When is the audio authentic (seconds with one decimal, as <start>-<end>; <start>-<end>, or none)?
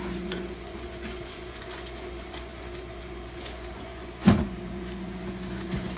none